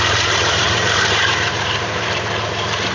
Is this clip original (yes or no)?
no